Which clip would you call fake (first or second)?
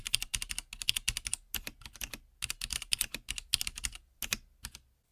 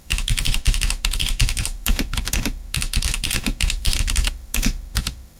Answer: second